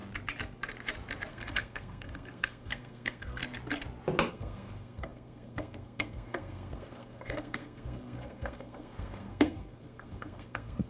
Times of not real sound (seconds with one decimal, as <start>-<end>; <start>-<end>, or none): 1.3-3.4; 4.3-10.9